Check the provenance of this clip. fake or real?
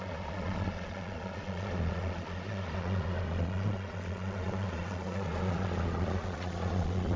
fake